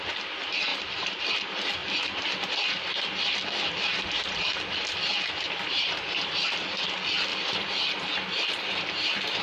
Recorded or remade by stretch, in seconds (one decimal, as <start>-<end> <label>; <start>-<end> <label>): 0.0-0.7 recorded; 0.7-1.2 remade; 1.2-1.8 recorded; 1.8-3.0 remade; 3.0-7.3 recorded; 7.3-7.9 remade; 7.9-9.4 recorded